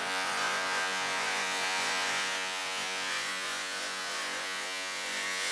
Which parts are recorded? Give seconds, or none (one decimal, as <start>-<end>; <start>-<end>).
none